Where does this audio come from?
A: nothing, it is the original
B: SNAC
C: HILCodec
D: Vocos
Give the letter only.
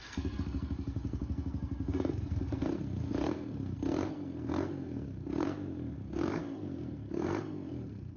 B